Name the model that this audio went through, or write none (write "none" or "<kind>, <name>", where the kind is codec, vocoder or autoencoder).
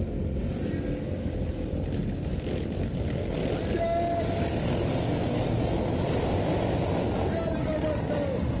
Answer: none